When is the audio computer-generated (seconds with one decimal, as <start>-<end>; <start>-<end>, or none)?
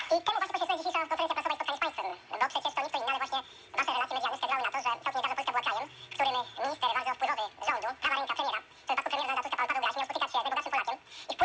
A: 0.0-0.5